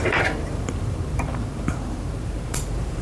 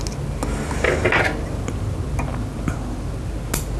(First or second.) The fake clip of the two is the first